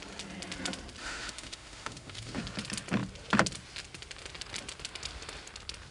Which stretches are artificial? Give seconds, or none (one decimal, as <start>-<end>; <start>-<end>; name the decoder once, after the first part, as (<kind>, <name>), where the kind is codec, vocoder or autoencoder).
1.0-2.4 (autoencoder, DAC-VAE)